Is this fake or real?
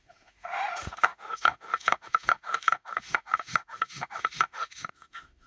fake